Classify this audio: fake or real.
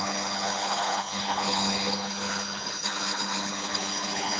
fake